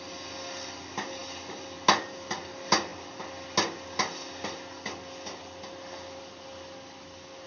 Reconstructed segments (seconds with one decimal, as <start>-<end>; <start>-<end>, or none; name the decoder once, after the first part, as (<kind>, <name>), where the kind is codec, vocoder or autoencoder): none